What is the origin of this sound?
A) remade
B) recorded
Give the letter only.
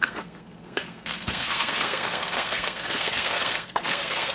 A